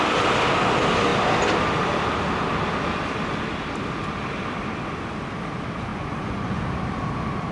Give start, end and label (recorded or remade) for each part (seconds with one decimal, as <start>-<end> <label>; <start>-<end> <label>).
0.0-5.9 recorded; 5.9-6.6 remade; 6.6-7.5 recorded